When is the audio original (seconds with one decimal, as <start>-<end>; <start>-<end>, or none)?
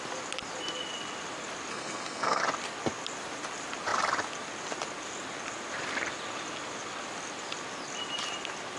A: 0.0-1.7; 2.4-8.8